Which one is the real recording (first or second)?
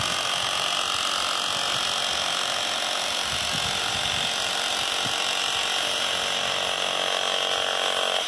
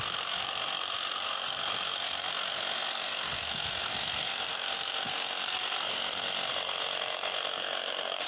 first